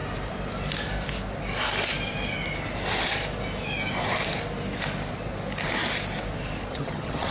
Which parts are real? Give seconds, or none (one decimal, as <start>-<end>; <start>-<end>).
0.0-6.7